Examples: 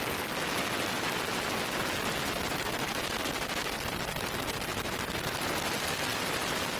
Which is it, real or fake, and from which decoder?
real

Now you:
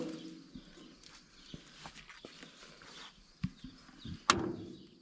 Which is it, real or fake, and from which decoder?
real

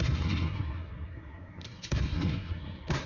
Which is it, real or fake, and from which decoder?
fake, codec, SNAC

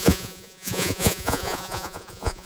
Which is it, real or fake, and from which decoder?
fake, vocoder, Vocos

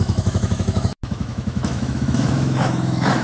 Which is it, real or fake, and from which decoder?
fake, autoencoder, DAC-VAE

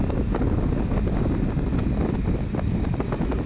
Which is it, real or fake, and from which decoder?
real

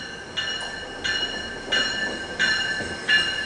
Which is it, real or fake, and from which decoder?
real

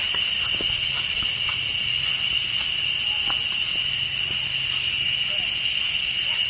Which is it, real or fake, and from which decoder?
real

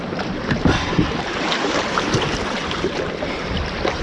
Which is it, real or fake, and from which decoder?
fake, vocoder, BigVGAN v2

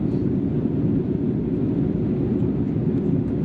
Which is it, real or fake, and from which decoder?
fake, vocoder, BigVGAN v2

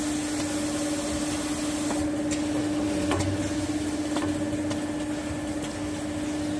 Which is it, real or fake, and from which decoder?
real